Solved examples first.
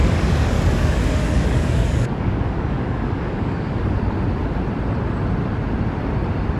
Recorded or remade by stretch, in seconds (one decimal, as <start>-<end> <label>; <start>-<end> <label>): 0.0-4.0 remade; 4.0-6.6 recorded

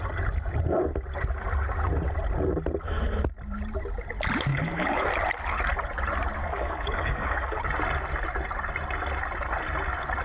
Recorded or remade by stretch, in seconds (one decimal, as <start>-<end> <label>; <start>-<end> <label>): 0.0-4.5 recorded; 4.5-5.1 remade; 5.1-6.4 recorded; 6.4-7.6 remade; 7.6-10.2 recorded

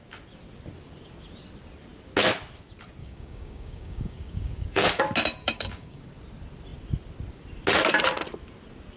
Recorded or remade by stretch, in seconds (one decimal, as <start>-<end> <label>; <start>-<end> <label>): 0.0-3.0 recorded; 3.0-5.0 remade; 5.0-5.4 recorded; 5.4-6.0 remade; 6.0-9.0 recorded